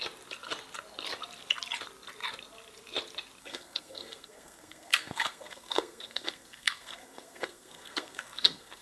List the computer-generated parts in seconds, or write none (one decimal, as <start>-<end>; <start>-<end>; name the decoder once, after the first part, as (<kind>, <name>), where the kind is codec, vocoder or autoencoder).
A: 3.4-8.8 (codec, SNAC)